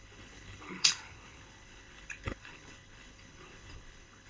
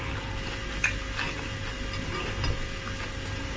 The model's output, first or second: first